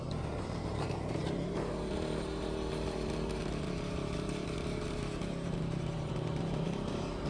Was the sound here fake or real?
fake